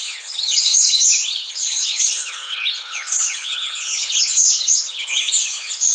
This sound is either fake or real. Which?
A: fake